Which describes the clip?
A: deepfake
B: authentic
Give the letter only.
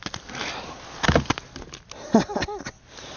B